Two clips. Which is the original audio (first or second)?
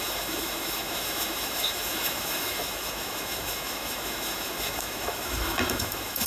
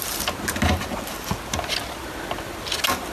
second